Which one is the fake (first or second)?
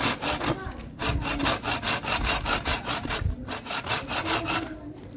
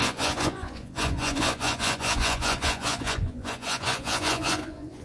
second